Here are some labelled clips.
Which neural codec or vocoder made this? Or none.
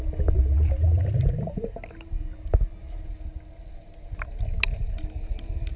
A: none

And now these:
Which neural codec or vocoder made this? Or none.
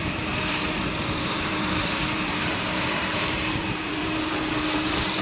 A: vocoder, BigVGAN v2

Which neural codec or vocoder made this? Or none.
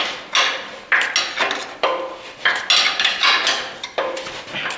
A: none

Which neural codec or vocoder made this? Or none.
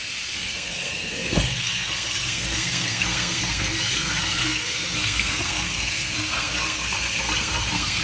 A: codec, SNAC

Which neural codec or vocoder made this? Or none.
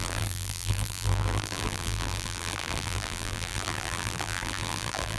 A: vocoder, BigVGAN v2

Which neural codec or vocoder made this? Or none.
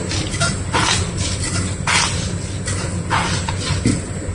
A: none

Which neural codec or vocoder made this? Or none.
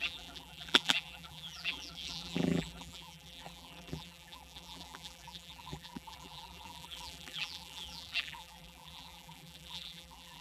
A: vocoder, BigVGAN v2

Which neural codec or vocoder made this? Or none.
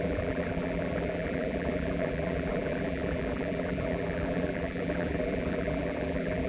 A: vocoder, BigVGAN v2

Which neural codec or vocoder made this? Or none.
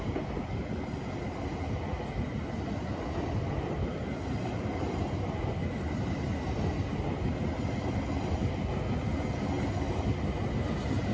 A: none